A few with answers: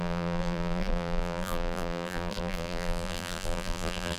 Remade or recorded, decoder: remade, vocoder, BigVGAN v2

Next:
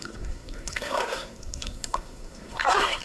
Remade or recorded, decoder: remade, codec, SNAC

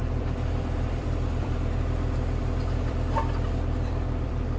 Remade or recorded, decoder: remade, vocoder, BigVGAN v2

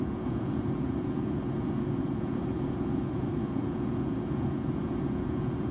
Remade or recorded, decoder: remade, vocoder, Vocos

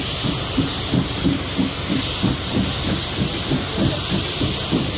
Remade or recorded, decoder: remade, vocoder, BigVGAN v2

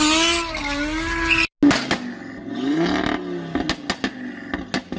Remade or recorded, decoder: recorded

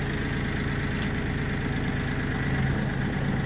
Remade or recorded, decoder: recorded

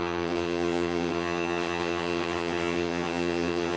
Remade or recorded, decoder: remade, vocoder, HiFi-GAN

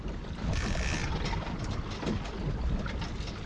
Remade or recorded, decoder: recorded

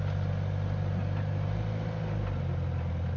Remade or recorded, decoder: recorded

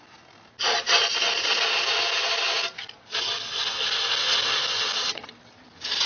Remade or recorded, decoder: recorded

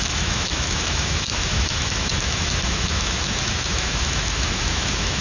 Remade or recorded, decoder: remade, autoencoder, DAC-VAE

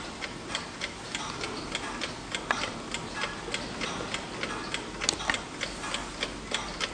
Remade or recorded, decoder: recorded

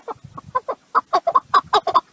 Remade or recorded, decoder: recorded